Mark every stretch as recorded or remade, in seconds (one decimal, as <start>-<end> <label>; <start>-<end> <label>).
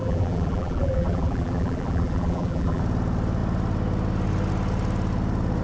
0.0-2.8 remade; 2.8-5.6 recorded